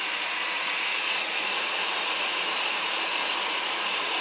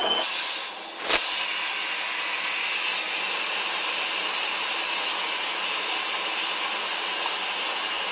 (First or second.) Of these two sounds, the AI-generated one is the first